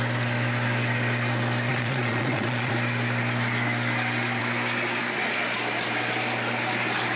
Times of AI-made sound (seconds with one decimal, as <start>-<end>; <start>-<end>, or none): 1.7-2.7